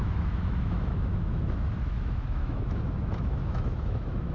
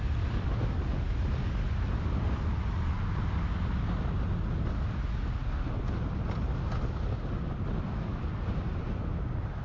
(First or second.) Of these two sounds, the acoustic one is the second